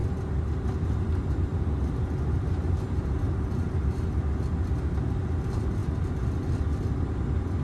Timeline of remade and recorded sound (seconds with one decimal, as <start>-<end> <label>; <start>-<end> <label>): 0.0-7.6 recorded